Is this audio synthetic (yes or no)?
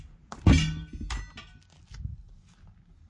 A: no